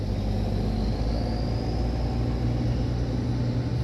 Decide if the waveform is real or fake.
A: real